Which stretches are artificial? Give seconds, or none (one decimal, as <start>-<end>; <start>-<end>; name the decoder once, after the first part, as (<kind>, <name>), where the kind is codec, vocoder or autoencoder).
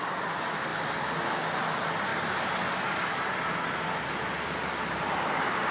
none